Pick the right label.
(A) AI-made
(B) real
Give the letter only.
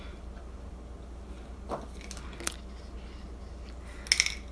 B